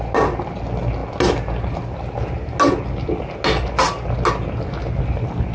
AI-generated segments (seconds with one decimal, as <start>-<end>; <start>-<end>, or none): none